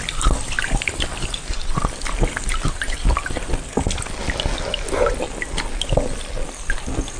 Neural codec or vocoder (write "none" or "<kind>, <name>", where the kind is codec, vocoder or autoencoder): none